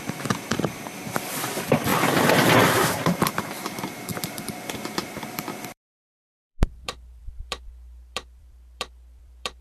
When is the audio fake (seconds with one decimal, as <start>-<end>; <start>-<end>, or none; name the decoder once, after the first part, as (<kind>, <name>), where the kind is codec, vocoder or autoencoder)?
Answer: 0.0-1.9 (vocoder, BigVGAN v2); 2.9-9.6